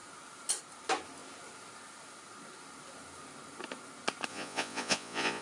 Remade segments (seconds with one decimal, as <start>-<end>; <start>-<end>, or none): 4.3-5.4